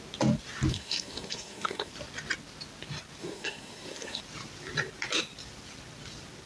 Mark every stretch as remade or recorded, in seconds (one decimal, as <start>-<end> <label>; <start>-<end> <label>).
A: 0.0-0.7 recorded; 0.7-1.9 remade; 1.9-3.2 recorded; 3.2-4.2 remade; 4.2-6.5 recorded